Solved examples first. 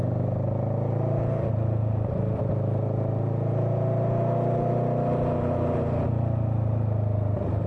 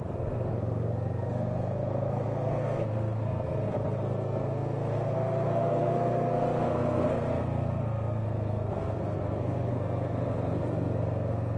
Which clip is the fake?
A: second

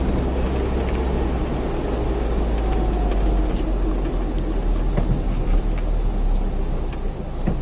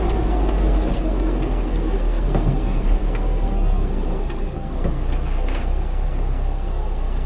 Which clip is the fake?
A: second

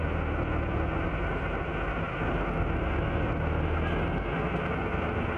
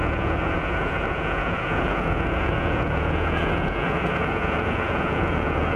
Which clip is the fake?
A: second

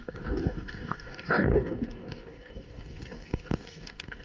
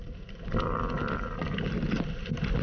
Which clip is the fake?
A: first